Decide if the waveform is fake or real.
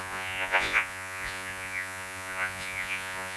fake